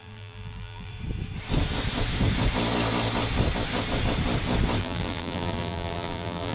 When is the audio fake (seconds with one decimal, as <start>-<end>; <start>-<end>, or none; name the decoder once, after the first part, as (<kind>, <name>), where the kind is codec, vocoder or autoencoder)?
0.0-0.9 (vocoder, BigVGAN v2); 4.8-6.5

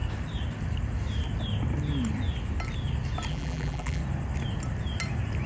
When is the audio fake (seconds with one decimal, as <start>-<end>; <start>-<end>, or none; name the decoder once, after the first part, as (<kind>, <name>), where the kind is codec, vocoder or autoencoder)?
3.3-4.0 (vocoder, BigVGAN v2)

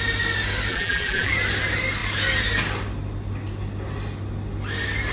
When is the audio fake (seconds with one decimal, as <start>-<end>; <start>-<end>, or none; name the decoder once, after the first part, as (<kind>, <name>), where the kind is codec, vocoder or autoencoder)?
0.7-1.3 (vocoder, BigVGAN v2)

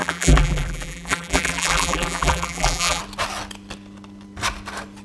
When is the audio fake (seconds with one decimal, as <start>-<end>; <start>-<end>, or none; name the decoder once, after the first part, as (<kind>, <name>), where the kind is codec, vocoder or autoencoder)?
0.0-3.0 (vocoder, BigVGAN v2)

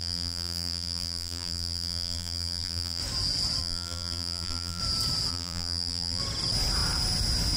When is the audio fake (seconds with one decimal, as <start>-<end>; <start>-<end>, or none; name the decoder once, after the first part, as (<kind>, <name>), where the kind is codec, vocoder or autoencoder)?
0.0-3.0 (vocoder, BigVGAN v2); 3.6-4.8; 5.3-6.2

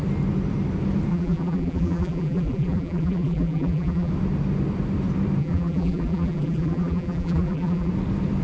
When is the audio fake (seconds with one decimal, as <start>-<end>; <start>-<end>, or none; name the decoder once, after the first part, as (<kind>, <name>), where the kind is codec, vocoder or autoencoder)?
1.1-4.1 (vocoder, BigVGAN v2); 5.4-7.9